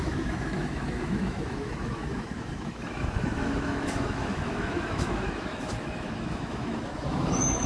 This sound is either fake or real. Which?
fake